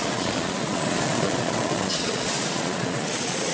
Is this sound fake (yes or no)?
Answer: yes